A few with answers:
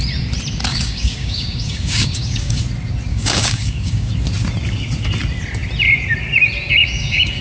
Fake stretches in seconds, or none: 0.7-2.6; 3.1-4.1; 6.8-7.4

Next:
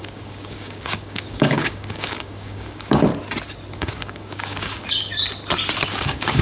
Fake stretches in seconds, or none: 0.0-3.1; 3.7-5.1; 5.9-6.4

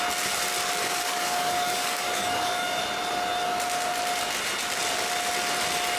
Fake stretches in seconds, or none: 0.8-2.8